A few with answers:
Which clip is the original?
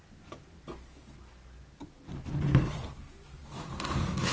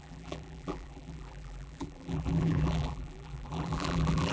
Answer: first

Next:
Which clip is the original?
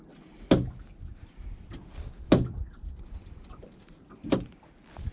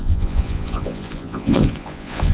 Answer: first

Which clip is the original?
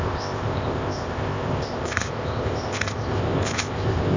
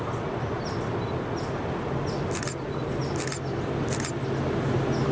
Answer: second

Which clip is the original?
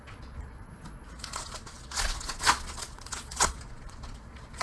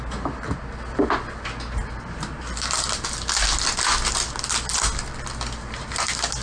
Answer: second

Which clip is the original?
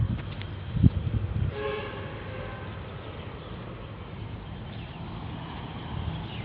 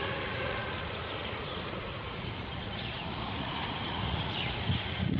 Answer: first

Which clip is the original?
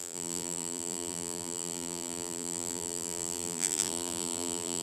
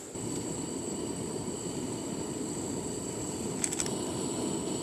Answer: second